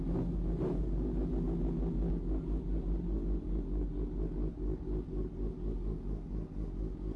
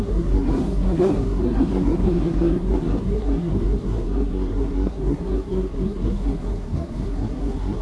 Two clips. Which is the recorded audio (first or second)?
first